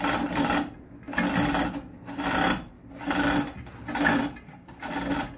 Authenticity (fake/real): real